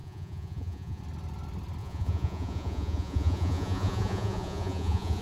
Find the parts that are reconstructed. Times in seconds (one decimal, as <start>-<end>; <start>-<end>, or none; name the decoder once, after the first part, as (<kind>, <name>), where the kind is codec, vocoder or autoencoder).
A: 0.0-1.0 (vocoder, Vocos); 1.8-5.2